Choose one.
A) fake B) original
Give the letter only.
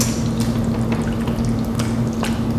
B